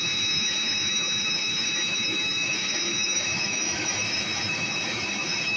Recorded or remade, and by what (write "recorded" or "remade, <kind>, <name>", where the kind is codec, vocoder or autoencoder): remade, autoencoder, DAC-VAE